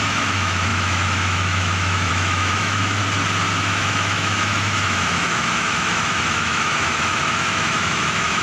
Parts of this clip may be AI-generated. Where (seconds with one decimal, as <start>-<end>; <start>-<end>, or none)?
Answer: 0.0-3.0; 3.6-8.4